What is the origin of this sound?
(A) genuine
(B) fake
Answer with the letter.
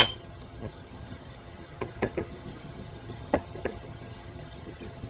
B